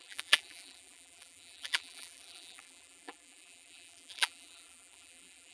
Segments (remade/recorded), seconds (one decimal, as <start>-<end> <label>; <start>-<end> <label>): 0.0-5.5 remade